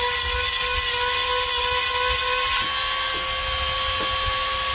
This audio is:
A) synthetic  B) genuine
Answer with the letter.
B